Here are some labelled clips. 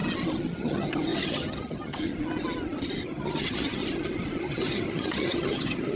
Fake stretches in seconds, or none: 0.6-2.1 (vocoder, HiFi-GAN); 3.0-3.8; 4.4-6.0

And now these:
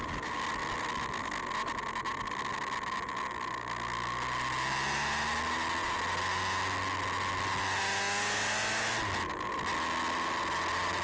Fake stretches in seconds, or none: none

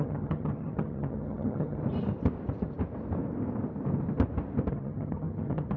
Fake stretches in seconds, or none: 0.0-1.8 (vocoder, HiFi-GAN); 4.7-5.8

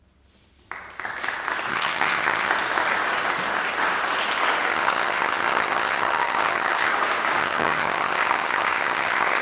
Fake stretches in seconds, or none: 1.7-2.5 (vocoder, HiFi-GAN); 4.7-6.9; 7.4-9.4

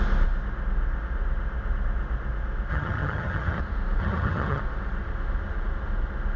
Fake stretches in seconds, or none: 2.7-3.6 (vocoder, HiFi-GAN); 4.0-4.6

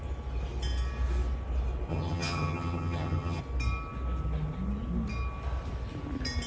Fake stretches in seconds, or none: 1.9-3.4 (vocoder, HiFi-GAN)

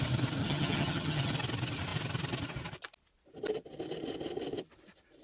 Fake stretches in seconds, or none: 0.4-1.3 (vocoder, HiFi-GAN)

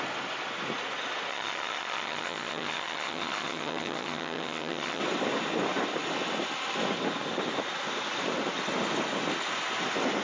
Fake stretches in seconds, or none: 1.3-5.0 (vocoder, HiFi-GAN)